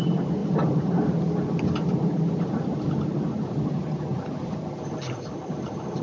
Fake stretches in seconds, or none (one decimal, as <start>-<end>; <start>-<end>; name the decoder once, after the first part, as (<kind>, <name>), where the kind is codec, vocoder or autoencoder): none